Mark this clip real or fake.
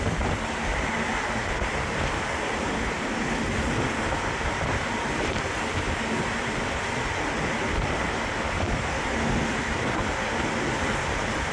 real